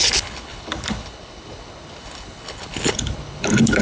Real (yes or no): no